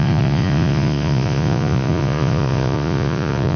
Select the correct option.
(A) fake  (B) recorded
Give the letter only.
A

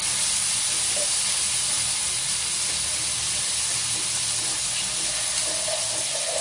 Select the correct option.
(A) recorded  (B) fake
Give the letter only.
A